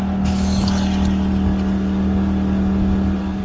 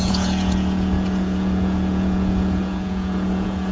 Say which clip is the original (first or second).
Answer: first